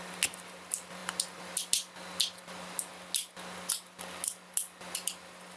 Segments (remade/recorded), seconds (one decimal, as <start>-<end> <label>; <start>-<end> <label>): 0.0-5.6 recorded